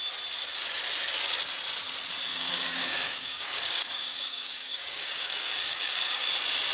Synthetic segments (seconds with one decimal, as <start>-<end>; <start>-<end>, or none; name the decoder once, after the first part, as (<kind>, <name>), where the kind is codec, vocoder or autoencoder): 2.3-6.3 (codec, DAC)